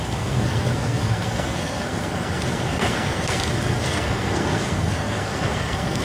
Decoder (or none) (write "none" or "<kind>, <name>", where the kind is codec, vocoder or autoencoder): codec, SNAC